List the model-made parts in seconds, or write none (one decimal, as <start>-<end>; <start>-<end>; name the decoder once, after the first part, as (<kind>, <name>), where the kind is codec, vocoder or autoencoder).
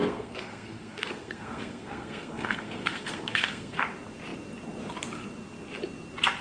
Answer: 0.0-3.8 (codec, SNAC)